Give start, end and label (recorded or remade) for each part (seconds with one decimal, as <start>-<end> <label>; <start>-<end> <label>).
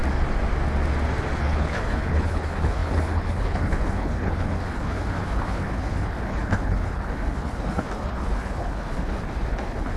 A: 0.0-1.4 recorded; 1.4-10.0 remade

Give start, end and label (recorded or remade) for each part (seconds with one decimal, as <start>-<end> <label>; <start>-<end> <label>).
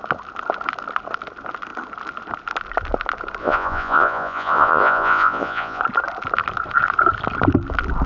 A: 0.0-3.4 recorded; 3.4-5.8 remade; 5.8-8.1 recorded